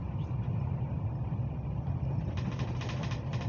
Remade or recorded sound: recorded